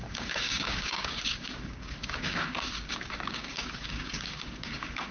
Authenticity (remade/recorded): remade